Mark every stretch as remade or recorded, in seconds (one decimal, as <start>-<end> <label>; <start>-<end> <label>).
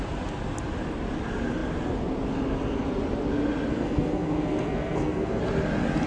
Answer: 0.0-3.7 recorded; 3.7-5.4 remade; 5.4-6.1 recorded